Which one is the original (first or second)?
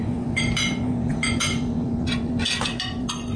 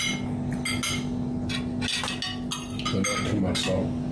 second